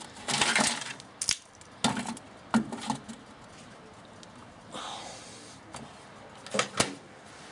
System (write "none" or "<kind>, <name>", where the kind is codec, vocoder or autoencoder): none